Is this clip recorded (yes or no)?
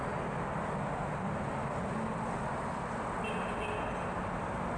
yes